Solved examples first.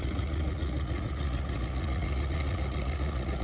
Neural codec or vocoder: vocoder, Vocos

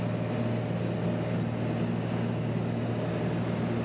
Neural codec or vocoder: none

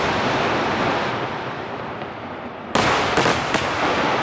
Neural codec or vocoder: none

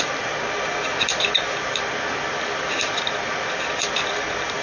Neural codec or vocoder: none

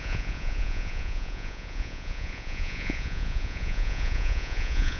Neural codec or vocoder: vocoder, Vocos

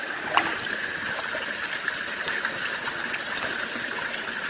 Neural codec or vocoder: none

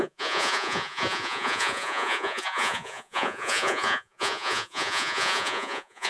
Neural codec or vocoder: vocoder, Vocos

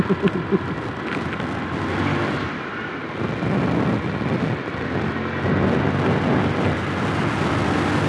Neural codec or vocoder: none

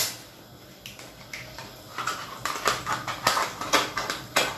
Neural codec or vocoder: none